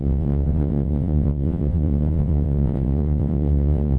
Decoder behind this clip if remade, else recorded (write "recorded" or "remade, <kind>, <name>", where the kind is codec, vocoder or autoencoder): remade, vocoder, WaveNeXt